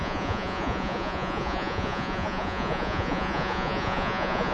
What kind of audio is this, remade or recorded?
remade